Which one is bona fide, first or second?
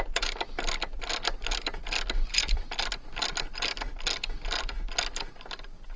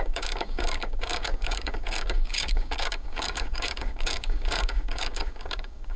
first